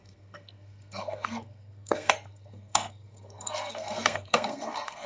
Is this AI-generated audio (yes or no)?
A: yes